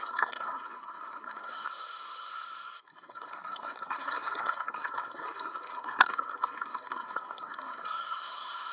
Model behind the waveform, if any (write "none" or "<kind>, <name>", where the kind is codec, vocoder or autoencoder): codec, SNAC